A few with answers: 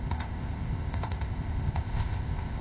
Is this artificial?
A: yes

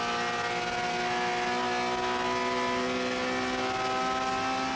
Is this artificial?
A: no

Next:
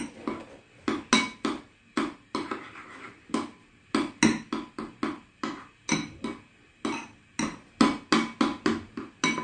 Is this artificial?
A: no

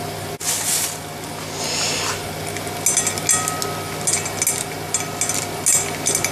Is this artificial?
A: no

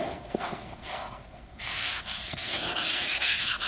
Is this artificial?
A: yes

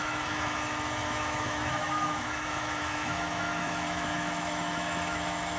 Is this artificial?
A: yes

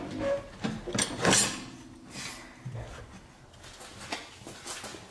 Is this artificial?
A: no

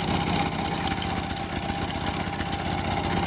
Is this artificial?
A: no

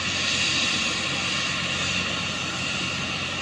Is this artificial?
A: no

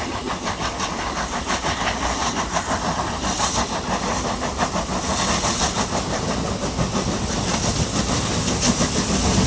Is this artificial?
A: no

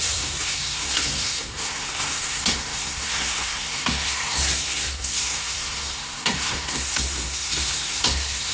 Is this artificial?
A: yes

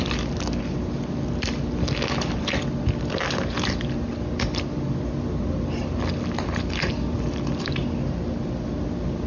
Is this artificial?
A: no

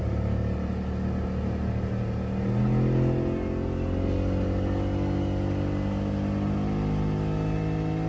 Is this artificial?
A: no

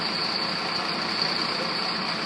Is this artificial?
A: no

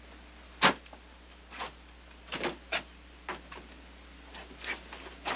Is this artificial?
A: no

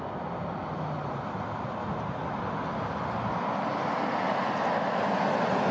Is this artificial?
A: no